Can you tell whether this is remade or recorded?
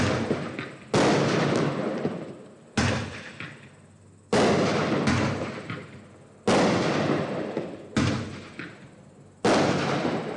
recorded